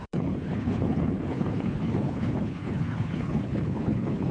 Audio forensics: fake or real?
fake